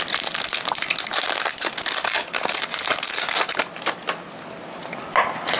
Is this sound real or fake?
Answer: real